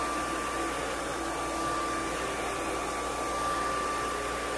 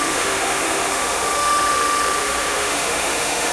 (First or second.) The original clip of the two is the first